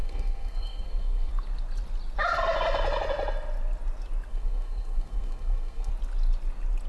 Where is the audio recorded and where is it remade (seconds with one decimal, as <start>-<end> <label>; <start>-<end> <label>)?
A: 0.0-1.3 remade; 1.3-4.3 recorded; 4.3-5.9 remade; 5.9-6.9 recorded